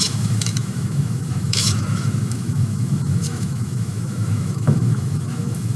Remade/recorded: remade